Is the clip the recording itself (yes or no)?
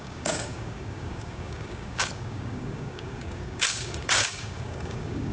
no